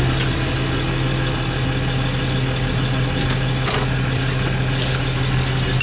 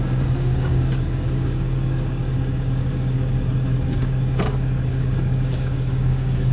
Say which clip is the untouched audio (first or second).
first